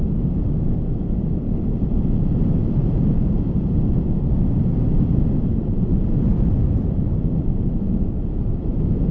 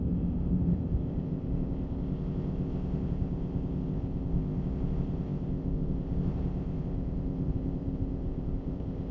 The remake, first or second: second